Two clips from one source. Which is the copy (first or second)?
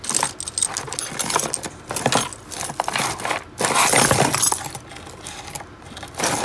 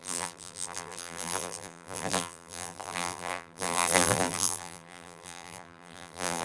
second